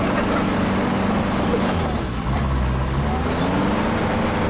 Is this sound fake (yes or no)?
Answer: no